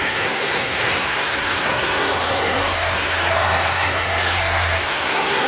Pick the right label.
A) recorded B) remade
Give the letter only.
B